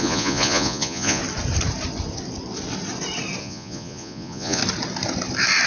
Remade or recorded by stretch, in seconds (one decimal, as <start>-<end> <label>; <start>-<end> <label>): 0.0-1.2 remade; 1.2-3.4 recorded; 3.4-4.6 remade; 4.6-5.7 recorded